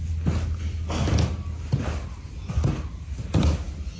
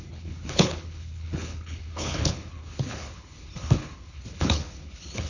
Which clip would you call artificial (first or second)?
second